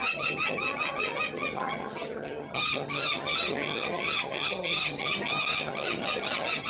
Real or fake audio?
fake